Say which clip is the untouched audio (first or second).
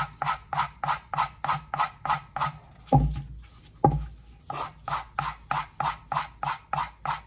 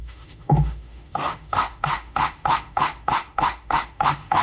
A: first